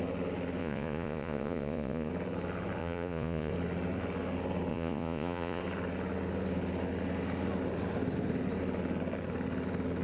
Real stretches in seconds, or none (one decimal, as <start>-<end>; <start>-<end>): 0.0-0.6; 2.1-2.8; 3.5-4.7; 5.6-10.0